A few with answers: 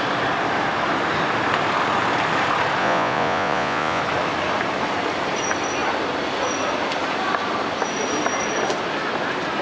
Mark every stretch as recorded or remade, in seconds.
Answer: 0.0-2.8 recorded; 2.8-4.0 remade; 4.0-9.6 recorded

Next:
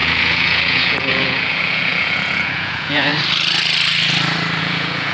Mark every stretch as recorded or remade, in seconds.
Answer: 0.0-3.1 remade; 3.1-4.6 recorded; 4.6-5.1 remade